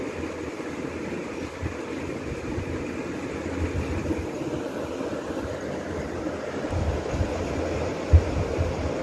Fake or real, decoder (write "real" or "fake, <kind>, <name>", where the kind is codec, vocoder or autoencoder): real